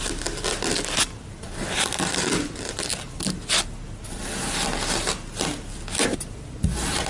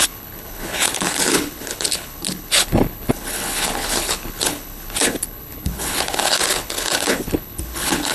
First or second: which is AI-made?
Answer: second